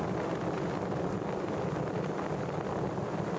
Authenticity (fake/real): real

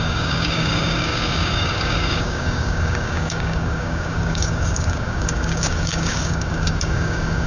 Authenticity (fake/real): fake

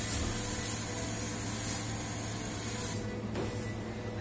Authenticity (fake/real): real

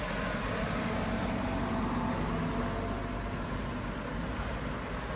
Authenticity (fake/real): real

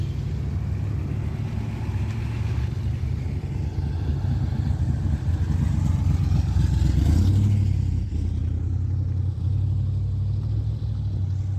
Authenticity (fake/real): real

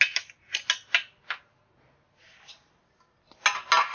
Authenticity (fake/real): real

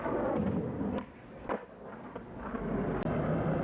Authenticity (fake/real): real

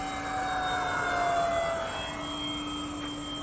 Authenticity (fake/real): real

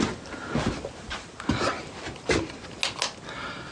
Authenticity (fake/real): real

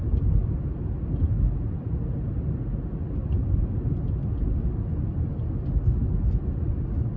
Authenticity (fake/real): real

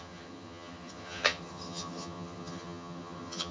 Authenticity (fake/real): fake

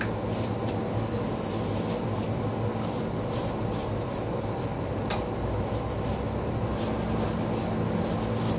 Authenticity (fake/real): real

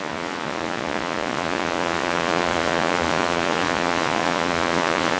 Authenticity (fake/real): fake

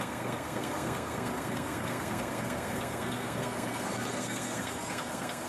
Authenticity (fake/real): fake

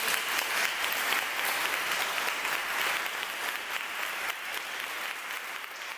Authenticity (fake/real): real